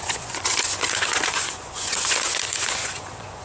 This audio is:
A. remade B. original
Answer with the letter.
A